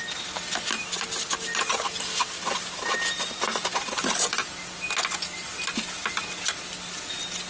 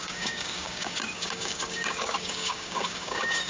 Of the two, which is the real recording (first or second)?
first